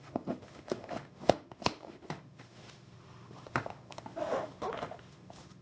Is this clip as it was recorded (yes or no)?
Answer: no